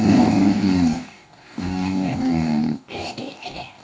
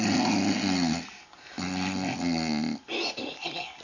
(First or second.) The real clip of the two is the second